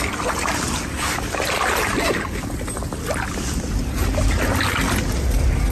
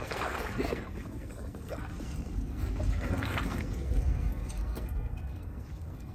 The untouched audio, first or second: first